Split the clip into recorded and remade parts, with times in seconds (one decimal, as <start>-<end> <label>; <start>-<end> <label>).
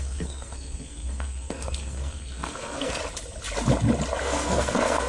0.0-3.0 remade; 3.0-4.2 recorded; 4.2-5.1 remade